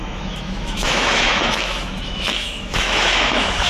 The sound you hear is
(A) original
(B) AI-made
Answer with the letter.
B